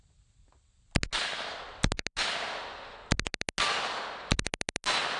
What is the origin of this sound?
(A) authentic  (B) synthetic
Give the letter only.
A